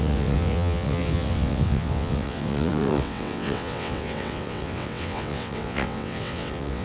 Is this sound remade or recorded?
remade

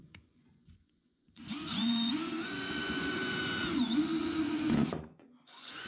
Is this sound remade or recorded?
remade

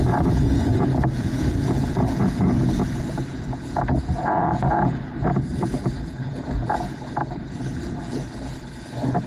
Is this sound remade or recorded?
remade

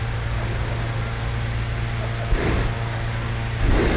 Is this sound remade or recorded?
recorded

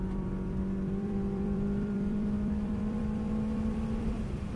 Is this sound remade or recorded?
remade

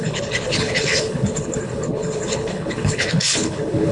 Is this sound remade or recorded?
remade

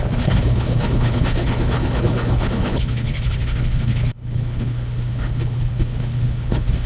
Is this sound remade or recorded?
remade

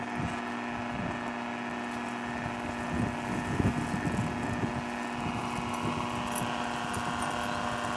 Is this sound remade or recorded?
recorded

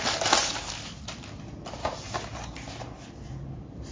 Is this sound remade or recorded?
recorded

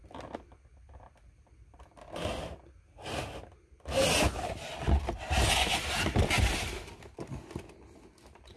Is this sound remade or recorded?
recorded